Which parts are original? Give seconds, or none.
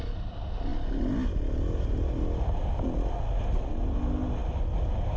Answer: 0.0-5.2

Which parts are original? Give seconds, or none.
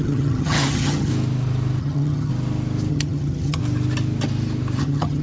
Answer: 1.1-1.8; 2.3-2.9; 3.6-4.8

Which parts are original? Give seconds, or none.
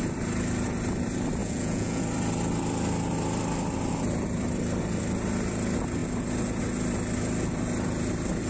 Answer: 0.0-1.4; 2.0-8.5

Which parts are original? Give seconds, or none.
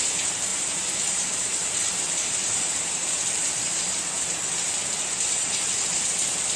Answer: 0.0-0.5; 3.2-6.6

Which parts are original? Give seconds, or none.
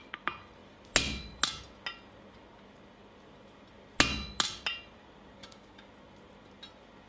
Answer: 0.0-5.4; 5.9-7.1